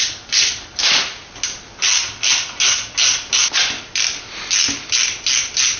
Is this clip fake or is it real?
real